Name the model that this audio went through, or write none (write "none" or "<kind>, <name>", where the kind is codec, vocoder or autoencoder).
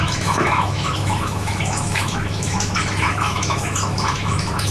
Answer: autoencoder, DAC-VAE